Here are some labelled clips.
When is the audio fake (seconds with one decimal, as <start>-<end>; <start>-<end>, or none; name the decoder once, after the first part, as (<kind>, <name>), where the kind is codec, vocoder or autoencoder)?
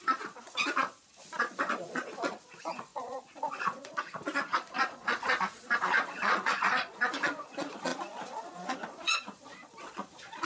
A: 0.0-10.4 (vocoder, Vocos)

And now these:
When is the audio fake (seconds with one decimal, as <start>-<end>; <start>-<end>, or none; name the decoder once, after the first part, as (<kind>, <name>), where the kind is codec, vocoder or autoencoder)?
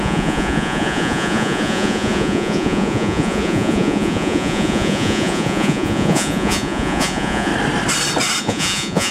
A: 0.0-7.5 (vocoder, Vocos); 8.4-9.1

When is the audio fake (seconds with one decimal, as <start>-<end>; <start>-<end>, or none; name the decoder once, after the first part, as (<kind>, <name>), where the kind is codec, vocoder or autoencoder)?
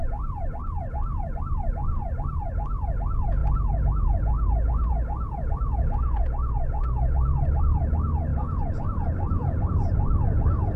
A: 3.4-7.6 (vocoder, Vocos); 8.3-9.7